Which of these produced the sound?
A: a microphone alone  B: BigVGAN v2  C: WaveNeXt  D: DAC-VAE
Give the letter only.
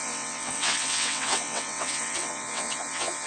C